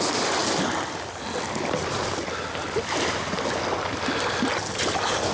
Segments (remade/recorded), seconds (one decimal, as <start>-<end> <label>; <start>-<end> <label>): 0.0-5.3 recorded